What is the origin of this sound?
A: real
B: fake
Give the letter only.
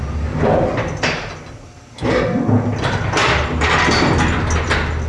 A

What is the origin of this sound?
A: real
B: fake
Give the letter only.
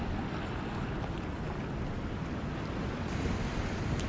A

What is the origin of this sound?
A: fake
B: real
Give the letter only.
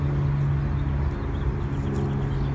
B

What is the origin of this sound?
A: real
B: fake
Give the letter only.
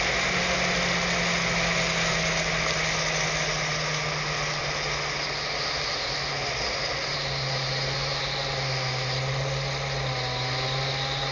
A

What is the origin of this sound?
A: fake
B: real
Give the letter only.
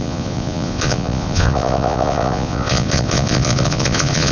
A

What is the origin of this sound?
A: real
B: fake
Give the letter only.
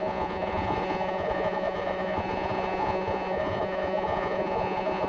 B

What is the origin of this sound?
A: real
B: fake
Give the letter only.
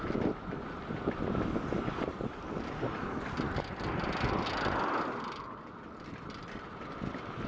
A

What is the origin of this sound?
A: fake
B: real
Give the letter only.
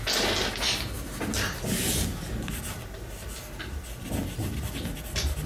B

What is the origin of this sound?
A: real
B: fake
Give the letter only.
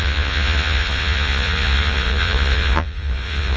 B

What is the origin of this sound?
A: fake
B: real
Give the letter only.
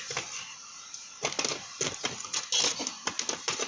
B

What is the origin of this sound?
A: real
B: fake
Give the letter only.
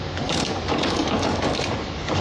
B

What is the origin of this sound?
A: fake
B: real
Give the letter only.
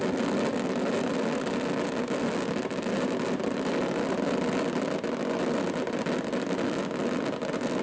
B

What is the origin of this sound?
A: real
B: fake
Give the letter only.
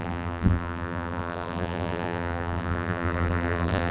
B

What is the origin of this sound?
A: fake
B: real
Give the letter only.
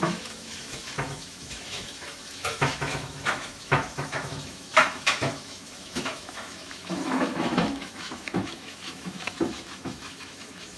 A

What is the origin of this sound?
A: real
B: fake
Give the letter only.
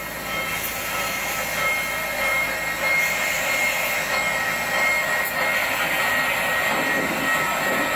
A